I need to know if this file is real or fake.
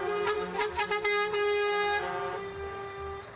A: real